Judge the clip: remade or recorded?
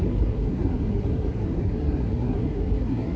remade